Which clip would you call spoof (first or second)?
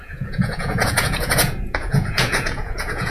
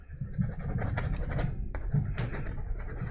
first